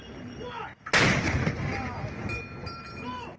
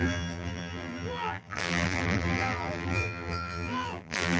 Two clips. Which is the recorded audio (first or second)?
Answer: first